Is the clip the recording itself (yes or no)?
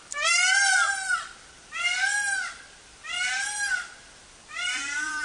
no